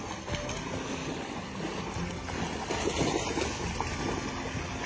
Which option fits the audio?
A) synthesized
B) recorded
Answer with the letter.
B